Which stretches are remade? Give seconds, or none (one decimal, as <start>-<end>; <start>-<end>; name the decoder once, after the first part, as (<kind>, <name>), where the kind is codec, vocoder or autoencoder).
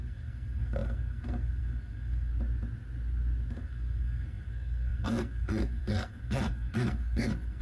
0.0-2.3 (codec, SNAC); 3.5-7.6